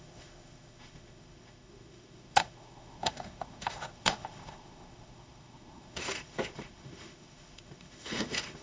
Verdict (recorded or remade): remade